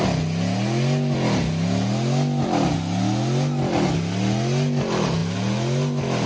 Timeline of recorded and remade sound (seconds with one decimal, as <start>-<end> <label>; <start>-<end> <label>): 0.0-6.3 recorded

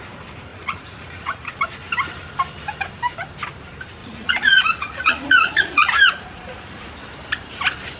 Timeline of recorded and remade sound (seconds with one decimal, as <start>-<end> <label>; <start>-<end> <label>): 0.0-0.5 recorded; 0.5-1.6 remade; 1.6-4.0 recorded; 4.0-6.9 remade; 6.9-8.0 recorded

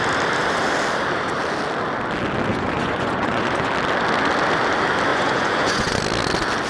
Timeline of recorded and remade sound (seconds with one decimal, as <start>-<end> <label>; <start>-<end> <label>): 0.0-2.5 recorded; 2.5-3.7 remade; 3.7-5.1 recorded; 5.1-6.0 remade; 6.0-6.7 recorded

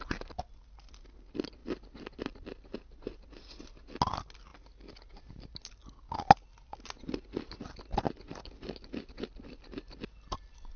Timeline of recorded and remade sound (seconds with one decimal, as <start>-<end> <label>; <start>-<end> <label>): 0.0-10.8 recorded

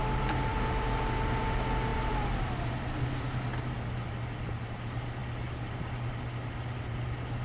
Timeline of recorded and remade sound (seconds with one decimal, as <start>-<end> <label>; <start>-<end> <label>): 0.0-0.5 recorded; 0.5-1.0 remade; 1.0-1.9 recorded; 1.9-3.0 remade; 3.0-7.4 recorded

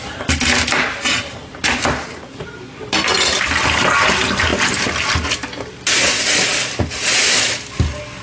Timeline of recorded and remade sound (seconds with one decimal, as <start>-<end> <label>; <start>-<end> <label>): 0.0-8.2 recorded